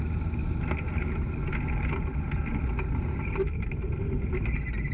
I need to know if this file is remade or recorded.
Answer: recorded